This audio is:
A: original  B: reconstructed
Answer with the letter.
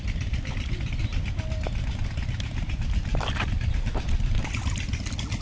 A